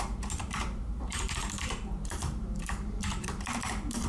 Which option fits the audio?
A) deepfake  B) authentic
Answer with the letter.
A